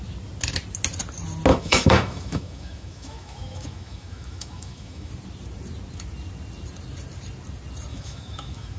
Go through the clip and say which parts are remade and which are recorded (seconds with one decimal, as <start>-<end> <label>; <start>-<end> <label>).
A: 0.0-1.5 recorded; 1.5-5.1 remade; 5.1-7.9 recorded; 7.9-8.8 remade